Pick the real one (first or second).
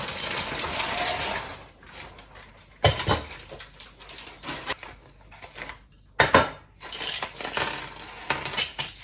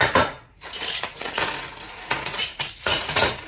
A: first